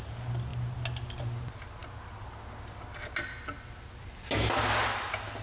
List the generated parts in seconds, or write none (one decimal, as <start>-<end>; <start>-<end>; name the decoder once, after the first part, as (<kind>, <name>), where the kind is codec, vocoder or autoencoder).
none